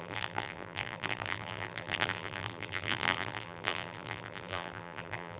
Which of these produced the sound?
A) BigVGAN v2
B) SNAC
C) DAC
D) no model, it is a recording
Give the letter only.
A